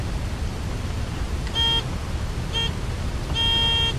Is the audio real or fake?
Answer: real